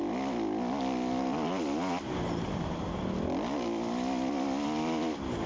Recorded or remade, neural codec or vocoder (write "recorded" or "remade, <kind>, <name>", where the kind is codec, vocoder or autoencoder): recorded